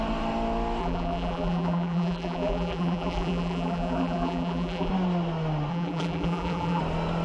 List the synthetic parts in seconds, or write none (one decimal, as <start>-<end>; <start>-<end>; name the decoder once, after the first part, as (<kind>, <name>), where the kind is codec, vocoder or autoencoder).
0.8-4.9 (vocoder, BigVGAN v2); 5.7-6.8